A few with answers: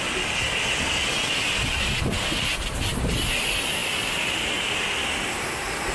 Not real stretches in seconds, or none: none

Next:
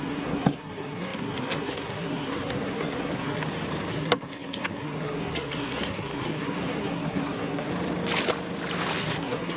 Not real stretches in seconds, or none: 0.0-3.4 (codec, SNAC); 3.9-7.7; 9.0-9.6

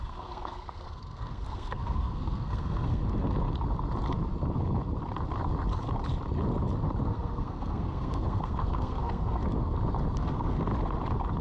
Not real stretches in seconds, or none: 0.0-3.0 (codec, SNAC); 7.0-9.4; 10.2-10.7

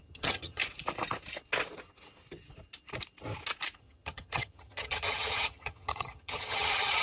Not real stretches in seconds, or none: 0.0-0.6 (vocoder, HiFi-GAN); 3.8-7.0